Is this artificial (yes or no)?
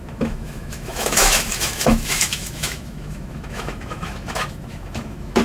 yes